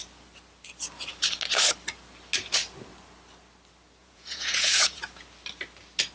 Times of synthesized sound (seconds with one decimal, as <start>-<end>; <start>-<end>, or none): 4.0-5.0